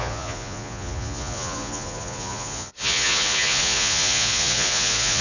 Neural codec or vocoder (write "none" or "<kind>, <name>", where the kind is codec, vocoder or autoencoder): vocoder, Vocos